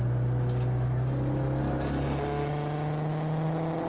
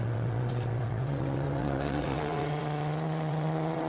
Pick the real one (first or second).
first